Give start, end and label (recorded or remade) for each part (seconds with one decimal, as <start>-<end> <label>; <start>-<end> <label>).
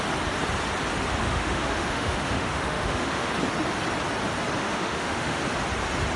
0.0-1.2 recorded; 1.2-3.3 remade; 3.3-4.6 recorded; 4.6-5.4 remade; 5.4-6.2 recorded